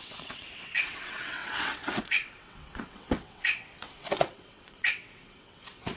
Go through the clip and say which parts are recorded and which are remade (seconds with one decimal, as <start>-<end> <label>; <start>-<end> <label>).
0.0-6.0 remade